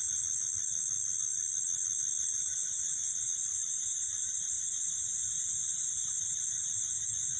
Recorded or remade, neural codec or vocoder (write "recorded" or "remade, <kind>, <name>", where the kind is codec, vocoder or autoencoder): recorded